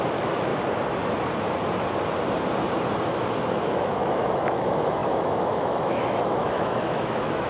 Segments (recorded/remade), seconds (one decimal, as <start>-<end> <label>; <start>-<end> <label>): 0.0-0.5 remade; 0.5-3.5 recorded; 3.5-7.5 remade